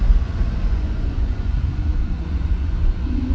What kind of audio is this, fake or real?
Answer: fake